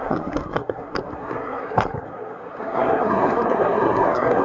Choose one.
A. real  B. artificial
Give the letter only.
B